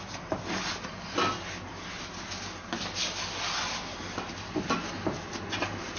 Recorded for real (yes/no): yes